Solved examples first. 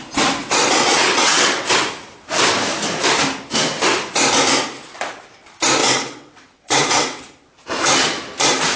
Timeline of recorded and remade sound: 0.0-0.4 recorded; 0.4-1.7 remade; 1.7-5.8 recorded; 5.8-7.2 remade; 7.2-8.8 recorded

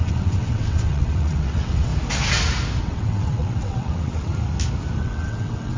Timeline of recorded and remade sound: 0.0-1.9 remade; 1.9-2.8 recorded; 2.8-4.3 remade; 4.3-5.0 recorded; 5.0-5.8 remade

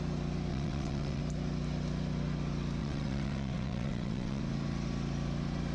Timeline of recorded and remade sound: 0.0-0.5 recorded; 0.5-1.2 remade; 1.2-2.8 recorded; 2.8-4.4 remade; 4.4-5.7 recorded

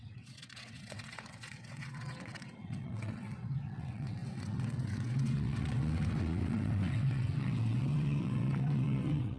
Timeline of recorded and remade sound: 0.0-9.4 remade

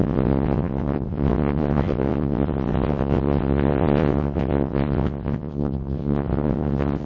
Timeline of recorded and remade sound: 0.0-7.0 remade

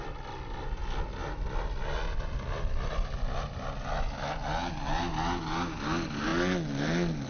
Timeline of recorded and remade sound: 0.0-7.3 recorded

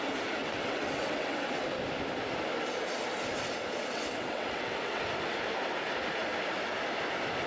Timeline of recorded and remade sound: 0.0-0.4 recorded; 0.4-1.6 remade; 1.6-3.9 recorded; 3.9-5.0 remade; 5.0-7.5 recorded